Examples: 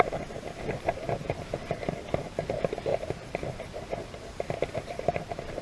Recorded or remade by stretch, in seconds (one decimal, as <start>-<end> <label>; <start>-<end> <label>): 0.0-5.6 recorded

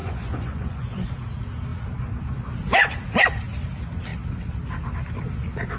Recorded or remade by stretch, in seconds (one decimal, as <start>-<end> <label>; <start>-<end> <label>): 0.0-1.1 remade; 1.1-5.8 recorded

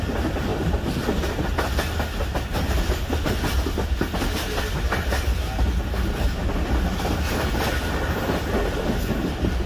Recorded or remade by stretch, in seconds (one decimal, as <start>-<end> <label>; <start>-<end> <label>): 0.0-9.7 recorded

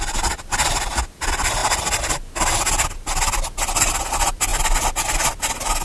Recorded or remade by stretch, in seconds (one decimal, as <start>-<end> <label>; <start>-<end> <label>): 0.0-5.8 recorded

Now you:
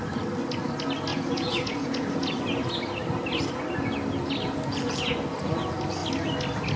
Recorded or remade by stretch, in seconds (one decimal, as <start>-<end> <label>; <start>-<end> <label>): 0.0-1.1 recorded; 1.1-2.3 remade; 2.3-6.8 recorded

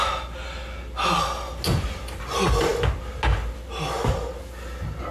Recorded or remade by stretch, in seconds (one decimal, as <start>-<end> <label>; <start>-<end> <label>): 0.0-5.1 recorded